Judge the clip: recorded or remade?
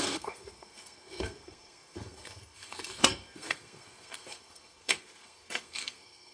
remade